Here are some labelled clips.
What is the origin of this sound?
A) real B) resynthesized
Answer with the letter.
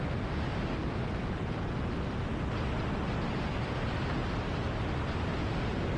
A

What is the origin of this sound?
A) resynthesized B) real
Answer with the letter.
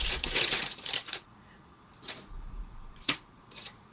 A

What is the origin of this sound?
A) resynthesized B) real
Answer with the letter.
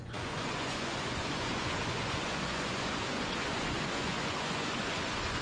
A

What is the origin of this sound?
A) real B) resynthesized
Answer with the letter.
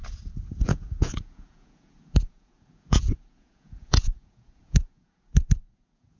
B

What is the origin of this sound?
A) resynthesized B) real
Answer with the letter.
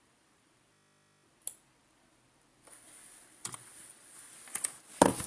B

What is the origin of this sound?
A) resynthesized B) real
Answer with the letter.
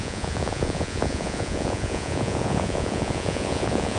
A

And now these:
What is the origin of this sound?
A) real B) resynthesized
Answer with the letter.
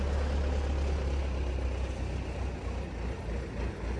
A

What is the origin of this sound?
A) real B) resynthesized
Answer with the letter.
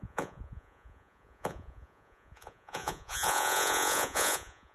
B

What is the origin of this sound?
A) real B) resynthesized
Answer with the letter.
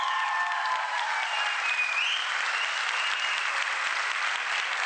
A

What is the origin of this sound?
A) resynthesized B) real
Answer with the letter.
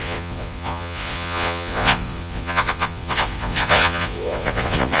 A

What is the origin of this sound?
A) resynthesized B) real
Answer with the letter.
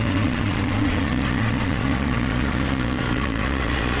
A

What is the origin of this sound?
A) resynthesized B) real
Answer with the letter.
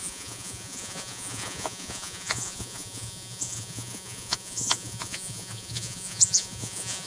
A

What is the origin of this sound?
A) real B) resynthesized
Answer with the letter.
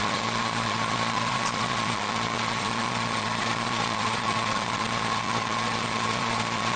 B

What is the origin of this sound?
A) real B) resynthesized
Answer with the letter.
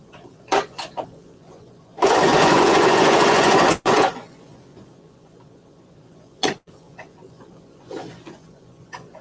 B